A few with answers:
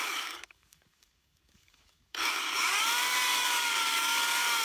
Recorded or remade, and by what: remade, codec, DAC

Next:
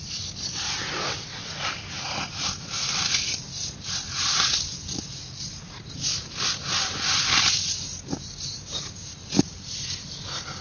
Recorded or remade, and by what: recorded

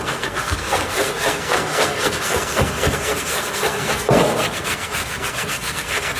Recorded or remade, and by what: remade, codec, SNAC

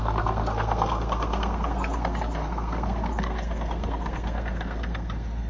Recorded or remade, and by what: remade, codec, SNAC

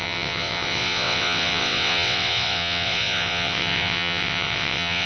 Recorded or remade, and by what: remade, vocoder, WaveNeXt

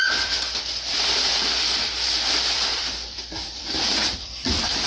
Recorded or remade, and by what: remade, vocoder, BigVGAN v2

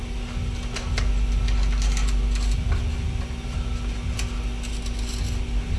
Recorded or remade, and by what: recorded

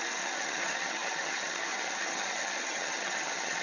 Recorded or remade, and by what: remade, vocoder, HiFi-GAN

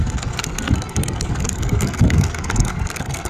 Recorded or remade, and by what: remade, codec, SNAC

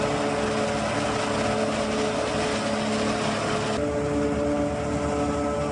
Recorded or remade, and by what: recorded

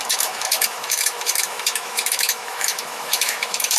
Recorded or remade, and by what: remade, autoencoder, DAC-VAE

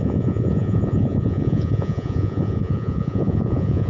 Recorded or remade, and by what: remade, vocoder, Vocos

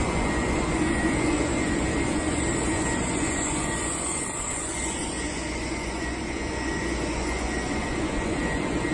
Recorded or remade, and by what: remade, vocoder, Vocos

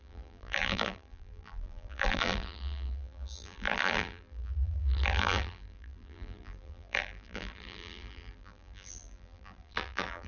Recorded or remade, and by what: remade, vocoder, BigVGAN v2